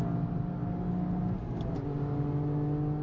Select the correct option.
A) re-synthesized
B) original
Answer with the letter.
B